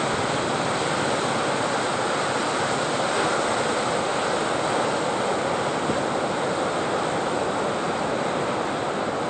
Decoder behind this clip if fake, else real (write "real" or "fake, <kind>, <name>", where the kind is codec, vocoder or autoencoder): real